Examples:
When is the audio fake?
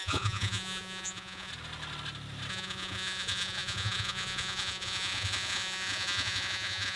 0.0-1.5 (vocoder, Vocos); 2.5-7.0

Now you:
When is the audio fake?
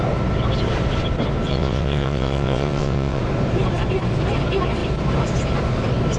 1.5-3.2 (vocoder, WaveNeXt)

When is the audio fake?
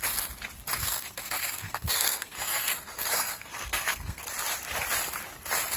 0.7-4.2 (codec, SNAC)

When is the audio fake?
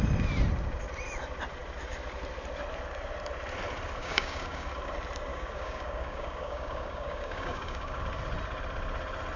4.0-4.7 (codec, DAC); 5.3-8.0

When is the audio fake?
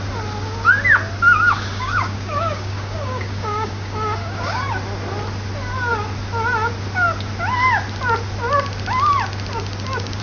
1.7-4.7 (codec, DAC)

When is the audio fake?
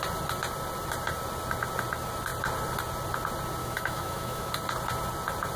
3.6-4.5 (autoencoder, DAC-VAE)